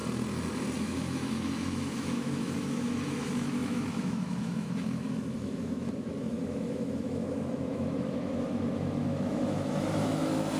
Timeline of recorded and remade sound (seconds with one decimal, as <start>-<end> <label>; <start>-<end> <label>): 0.0-0.8 recorded; 0.8-10.6 remade